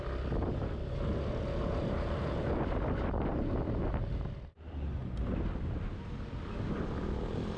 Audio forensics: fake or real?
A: real